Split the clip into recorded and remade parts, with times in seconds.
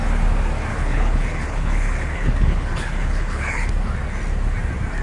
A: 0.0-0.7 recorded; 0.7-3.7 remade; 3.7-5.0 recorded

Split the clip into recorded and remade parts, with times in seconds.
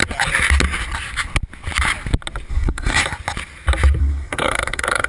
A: 0.0-2.5 recorded; 2.5-3.0 remade; 3.0-4.0 recorded; 4.0-5.1 remade